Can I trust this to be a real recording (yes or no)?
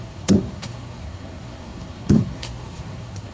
no